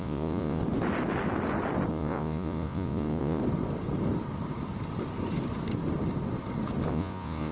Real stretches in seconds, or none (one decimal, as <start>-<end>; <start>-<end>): 0.6-1.9; 3.4-6.9